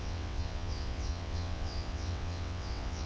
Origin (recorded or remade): remade